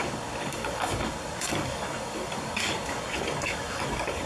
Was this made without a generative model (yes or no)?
no